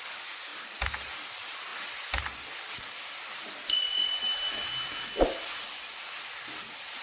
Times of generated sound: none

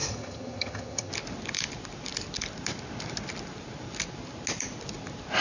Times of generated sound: 0.0-1.1

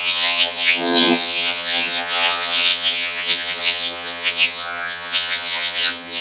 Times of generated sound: 0.0-6.2

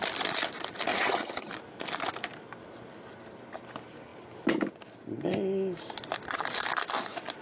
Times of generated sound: 0.9-1.5